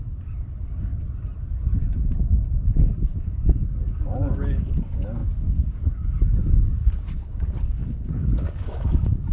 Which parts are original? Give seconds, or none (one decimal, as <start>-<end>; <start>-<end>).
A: 0.9-2.7